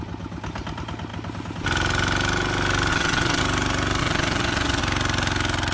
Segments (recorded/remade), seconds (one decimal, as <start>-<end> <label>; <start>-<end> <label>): 0.0-2.9 recorded; 2.9-3.4 remade; 3.4-4.0 recorded; 4.0-4.8 remade; 4.8-5.7 recorded